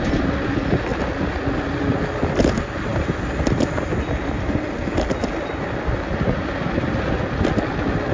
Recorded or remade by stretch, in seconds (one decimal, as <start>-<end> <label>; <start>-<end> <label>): 0.0-0.9 recorded; 0.9-1.7 remade; 1.7-2.9 recorded; 2.9-7.1 remade; 7.1-8.1 recorded